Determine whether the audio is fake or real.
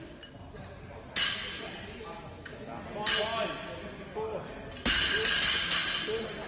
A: real